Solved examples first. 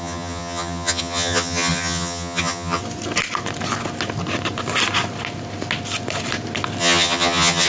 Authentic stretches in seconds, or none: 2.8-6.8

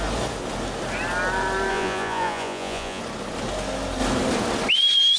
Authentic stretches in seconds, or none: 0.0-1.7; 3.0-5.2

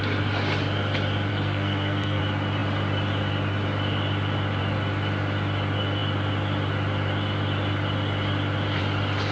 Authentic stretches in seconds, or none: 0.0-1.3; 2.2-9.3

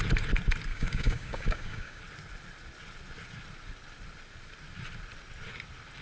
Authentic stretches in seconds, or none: 0.0-0.7; 2.0-6.0